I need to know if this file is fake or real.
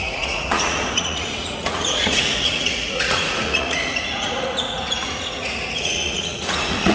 fake